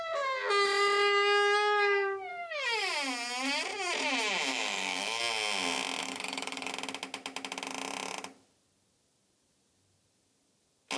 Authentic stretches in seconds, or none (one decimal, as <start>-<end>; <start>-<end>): 0.0-2.3; 2.9-4.5; 5.2-6.0; 6.7-11.0

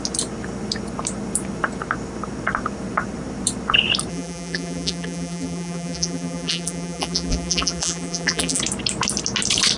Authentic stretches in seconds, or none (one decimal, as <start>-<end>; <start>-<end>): 0.0-4.1; 8.6-9.8

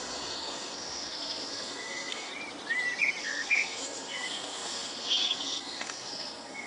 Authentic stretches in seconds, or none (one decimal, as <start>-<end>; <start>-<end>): 2.3-3.2